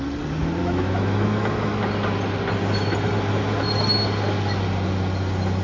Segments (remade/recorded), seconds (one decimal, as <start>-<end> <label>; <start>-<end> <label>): 0.0-0.6 recorded; 0.6-1.8 remade; 1.8-5.6 recorded